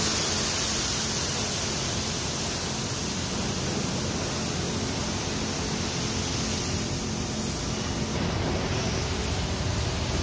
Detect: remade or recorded recorded